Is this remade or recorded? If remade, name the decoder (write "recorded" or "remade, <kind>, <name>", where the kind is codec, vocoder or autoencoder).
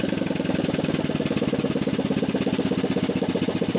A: recorded